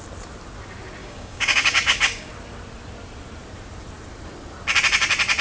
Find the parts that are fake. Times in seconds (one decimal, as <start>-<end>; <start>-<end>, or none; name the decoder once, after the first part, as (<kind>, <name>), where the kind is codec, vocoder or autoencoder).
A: 1.0-2.3 (codec, DAC)